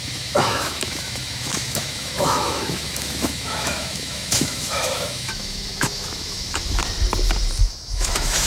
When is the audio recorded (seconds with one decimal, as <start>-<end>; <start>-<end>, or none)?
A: 6.8-7.6